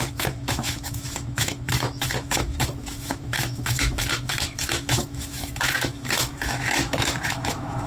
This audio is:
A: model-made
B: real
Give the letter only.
A